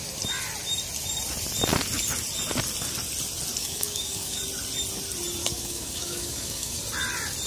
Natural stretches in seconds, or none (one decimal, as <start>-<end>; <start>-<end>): 0.0-3.6; 4.4-5.4; 6.8-7.5